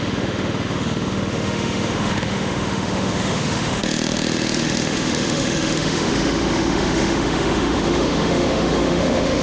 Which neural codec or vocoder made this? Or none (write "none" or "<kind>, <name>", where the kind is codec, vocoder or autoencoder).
autoencoder, DAC-VAE